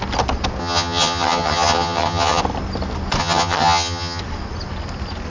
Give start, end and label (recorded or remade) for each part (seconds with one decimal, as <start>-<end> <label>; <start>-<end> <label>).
0.0-0.6 recorded; 0.6-2.4 remade; 2.4-3.2 recorded; 3.2-4.2 remade; 4.2-5.3 recorded

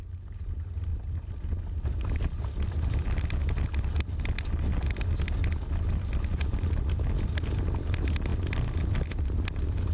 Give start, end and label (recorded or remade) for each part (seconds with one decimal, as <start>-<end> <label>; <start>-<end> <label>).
0.0-9.9 recorded